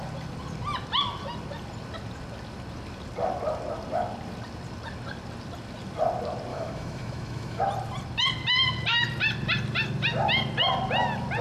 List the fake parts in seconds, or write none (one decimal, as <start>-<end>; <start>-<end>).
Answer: 6.5-7.6

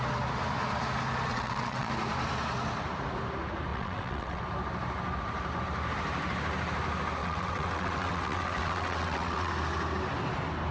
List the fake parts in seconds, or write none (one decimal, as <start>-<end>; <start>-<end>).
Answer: 1.3-1.9; 3.7-4.4; 7.2-9.5

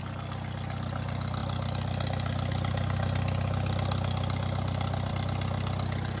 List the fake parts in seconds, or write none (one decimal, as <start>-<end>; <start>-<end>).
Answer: none

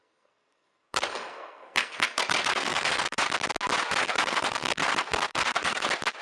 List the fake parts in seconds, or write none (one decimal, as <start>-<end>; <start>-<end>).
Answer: 0.0-3.2; 4.0-5.8